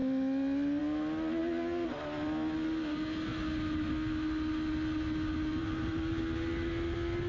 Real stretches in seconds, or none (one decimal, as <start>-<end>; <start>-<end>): 0.0-5.6; 6.2-7.3